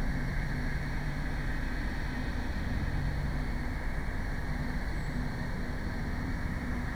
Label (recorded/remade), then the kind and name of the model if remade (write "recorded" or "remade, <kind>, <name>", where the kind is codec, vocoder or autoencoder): remade, vocoder, BigVGAN v2